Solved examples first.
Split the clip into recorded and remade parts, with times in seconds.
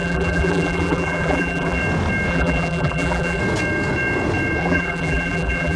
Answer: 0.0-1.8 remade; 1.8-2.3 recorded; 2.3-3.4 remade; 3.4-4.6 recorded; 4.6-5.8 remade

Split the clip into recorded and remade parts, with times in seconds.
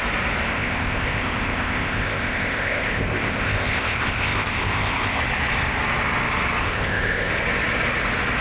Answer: 0.0-0.5 recorded; 0.5-5.2 remade; 5.2-6.6 recorded; 6.6-7.3 remade; 7.3-8.4 recorded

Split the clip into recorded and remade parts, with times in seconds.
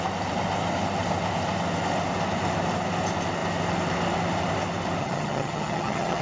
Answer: 0.0-5.0 recorded; 5.0-6.2 remade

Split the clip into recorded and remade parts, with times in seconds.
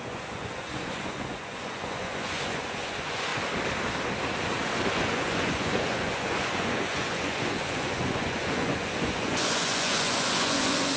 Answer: 0.0-3.3 remade; 3.3-4.9 recorded; 4.9-11.0 remade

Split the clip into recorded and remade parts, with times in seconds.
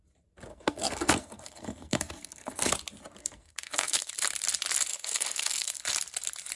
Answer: 0.0-0.5 recorded; 0.5-2.7 remade; 2.7-3.2 recorded; 3.2-4.1 remade; 4.1-4.9 recorded; 4.9-5.8 remade; 5.8-6.6 recorded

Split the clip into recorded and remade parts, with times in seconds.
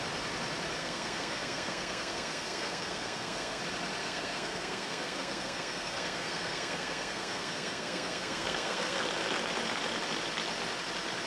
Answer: 0.0-0.8 recorded; 0.8-3.6 remade; 3.6-4.0 recorded; 4.0-9.0 remade; 9.0-11.3 recorded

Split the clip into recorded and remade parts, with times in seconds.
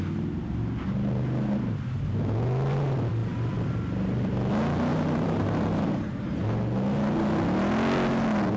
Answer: 0.0-4.9 recorded; 4.9-6.4 remade; 6.4-8.6 recorded